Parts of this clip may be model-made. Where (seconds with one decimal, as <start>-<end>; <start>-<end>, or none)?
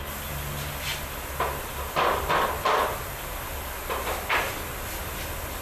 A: none